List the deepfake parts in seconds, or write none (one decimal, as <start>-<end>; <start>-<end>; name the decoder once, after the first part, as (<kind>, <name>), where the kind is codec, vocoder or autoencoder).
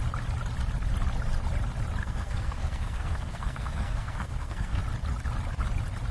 2.0-4.8 (codec, SNAC)